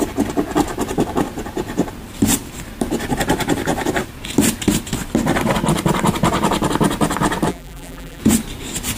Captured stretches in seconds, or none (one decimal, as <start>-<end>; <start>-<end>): 0.0-7.5; 8.2-9.0